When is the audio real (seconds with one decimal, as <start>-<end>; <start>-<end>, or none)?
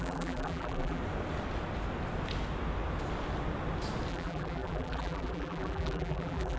1.0-4.1